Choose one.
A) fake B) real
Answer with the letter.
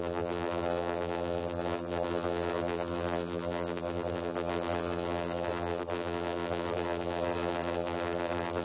A